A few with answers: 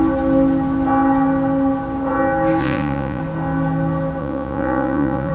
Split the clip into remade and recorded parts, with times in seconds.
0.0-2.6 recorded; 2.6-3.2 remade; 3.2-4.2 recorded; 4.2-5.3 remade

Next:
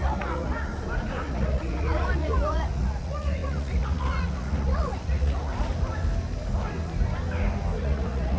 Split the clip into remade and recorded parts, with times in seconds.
0.0-0.7 remade; 0.7-1.2 recorded; 1.2-5.5 remade; 5.5-7.8 recorded; 7.8-8.4 remade

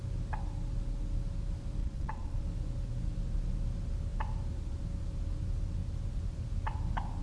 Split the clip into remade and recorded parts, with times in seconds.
0.0-1.8 recorded; 1.8-2.4 remade; 2.4-7.2 recorded

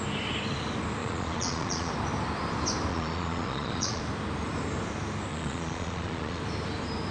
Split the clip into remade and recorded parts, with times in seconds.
0.0-1.0 recorded; 1.0-1.9 remade; 1.9-2.9 recorded; 2.9-4.0 remade; 4.0-5.3 recorded; 5.3-6.4 remade; 6.4-7.1 recorded